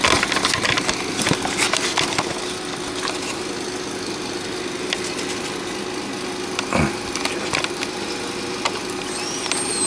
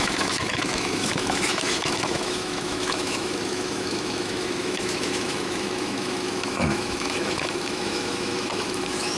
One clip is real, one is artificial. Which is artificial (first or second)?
second